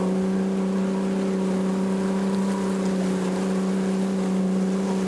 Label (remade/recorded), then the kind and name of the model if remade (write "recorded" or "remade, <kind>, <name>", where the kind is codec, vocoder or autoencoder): recorded